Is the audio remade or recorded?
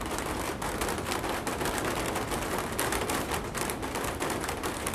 recorded